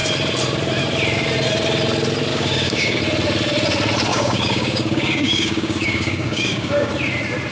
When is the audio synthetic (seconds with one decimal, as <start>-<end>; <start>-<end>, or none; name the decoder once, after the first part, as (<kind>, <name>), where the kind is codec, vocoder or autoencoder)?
2.3-3.0 (codec, DAC); 4.1-6.9